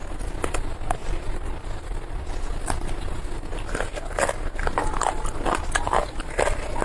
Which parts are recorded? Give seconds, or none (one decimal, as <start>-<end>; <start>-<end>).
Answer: 0.0-6.8